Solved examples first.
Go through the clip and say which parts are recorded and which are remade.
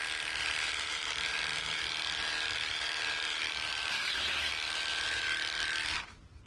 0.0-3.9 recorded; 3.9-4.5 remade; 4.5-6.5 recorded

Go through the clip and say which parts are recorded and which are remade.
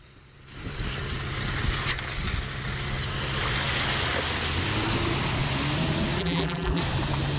0.0-6.2 recorded; 6.2-6.8 remade; 6.8-7.4 recorded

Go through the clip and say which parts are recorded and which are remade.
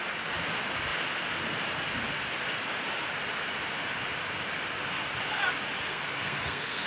0.0-5.9 recorded; 5.9-6.9 remade